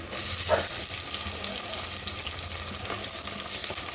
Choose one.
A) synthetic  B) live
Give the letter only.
B